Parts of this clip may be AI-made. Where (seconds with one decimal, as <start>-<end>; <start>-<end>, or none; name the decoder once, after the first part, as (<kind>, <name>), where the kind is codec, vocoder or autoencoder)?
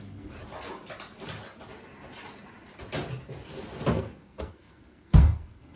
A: 0.0-0.4 (codec, SNAC); 3.9-5.8